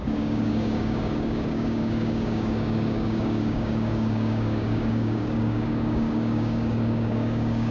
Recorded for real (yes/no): no